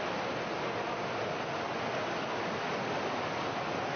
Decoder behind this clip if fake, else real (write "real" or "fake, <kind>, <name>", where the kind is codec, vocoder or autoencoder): real